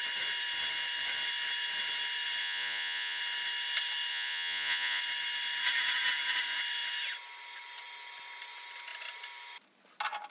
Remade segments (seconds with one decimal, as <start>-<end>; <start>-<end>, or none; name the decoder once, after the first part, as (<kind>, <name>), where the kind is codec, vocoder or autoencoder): 2.4-3.2 (vocoder, Vocos); 4.1-5.0